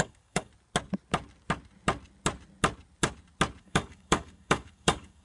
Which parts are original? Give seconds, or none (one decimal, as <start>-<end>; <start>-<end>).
0.5-3.6